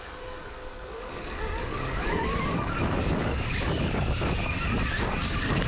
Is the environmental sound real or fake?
fake